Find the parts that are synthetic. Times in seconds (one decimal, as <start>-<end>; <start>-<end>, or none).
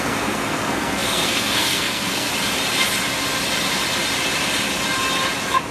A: 0.0-2.3